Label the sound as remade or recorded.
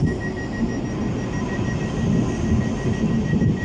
recorded